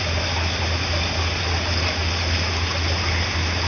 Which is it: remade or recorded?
recorded